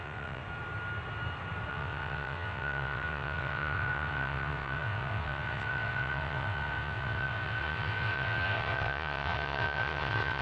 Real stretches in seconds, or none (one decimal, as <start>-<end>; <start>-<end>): 0.4-1.7